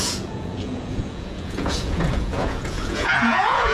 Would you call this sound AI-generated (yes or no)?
yes